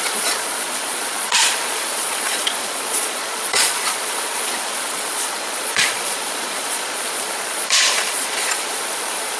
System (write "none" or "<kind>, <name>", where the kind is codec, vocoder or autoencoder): vocoder, Vocos